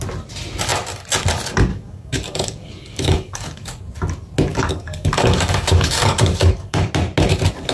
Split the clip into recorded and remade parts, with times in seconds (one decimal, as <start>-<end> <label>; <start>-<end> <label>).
0.0-1.7 recorded; 1.7-3.8 remade; 3.8-4.5 recorded; 4.5-6.9 remade; 6.9-7.7 recorded